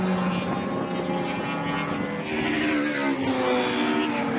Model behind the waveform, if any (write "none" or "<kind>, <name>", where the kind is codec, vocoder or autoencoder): none